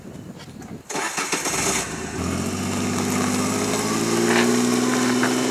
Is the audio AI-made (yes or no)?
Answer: no